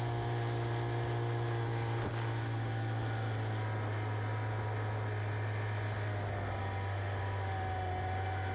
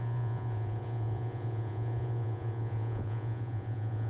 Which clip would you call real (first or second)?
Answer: first